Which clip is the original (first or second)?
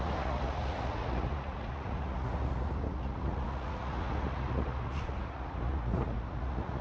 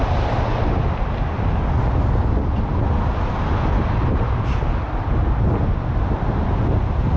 second